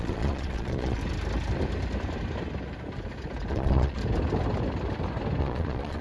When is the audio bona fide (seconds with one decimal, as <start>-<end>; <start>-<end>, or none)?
1.0-3.5; 4.0-5.4